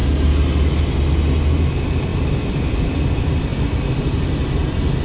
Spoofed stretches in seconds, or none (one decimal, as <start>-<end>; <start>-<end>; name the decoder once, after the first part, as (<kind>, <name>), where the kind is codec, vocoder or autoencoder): none